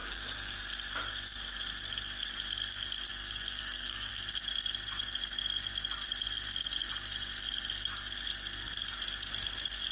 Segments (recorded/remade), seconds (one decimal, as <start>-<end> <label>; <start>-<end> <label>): 0.0-0.6 remade; 0.6-3.1 recorded; 3.1-4.1 remade; 4.1-9.9 recorded